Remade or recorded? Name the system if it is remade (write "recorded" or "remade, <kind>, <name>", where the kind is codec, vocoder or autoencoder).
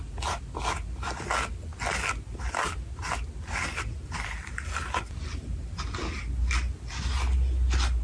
recorded